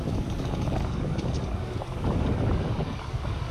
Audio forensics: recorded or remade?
remade